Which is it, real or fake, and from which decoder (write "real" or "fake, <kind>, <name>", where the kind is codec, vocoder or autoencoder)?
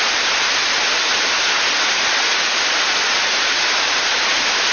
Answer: real